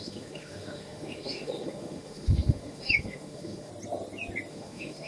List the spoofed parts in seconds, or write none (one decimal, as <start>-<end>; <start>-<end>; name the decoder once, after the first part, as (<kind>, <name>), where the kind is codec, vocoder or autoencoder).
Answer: 0.0-3.7 (autoencoder, DAC-VAE); 4.5-5.1